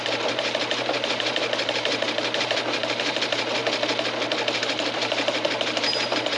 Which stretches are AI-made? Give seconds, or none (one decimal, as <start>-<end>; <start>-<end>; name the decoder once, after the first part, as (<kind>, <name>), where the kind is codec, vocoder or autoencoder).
0.0-3.6 (vocoder, BigVGAN v2); 4.6-6.4